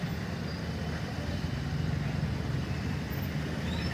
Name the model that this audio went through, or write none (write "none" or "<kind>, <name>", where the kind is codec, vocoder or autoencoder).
none